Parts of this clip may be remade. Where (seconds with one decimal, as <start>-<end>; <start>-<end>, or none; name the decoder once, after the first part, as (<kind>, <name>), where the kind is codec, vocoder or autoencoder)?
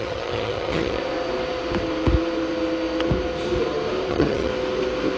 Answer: 0.0-1.0 (vocoder, HiFi-GAN); 4.1-4.5